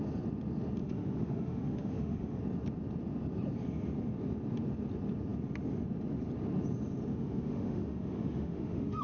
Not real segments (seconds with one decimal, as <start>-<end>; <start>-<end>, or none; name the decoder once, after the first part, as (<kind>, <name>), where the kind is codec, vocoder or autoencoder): 0.8-2.4 (autoencoder, DAC-VAE); 7.1-9.0